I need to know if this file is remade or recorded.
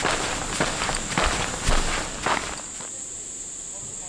recorded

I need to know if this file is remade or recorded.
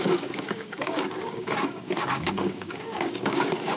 remade